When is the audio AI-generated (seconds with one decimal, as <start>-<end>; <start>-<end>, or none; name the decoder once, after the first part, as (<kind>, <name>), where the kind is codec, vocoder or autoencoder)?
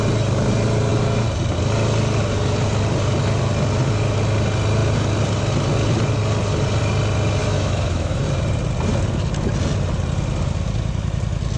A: 7.4-8.2 (autoencoder, DAC-VAE)